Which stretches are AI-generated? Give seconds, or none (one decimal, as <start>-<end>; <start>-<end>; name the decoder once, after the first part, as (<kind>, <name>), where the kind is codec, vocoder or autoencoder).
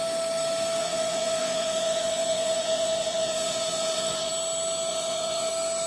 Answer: 0.8-4.3 (vocoder, Vocos); 4.9-5.5